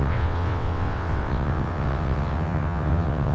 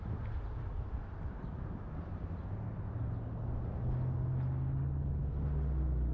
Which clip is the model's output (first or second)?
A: first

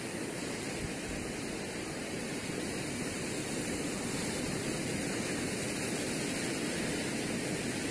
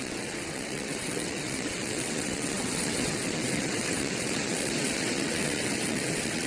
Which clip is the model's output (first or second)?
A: second